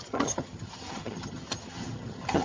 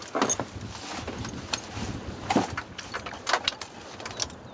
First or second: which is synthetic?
first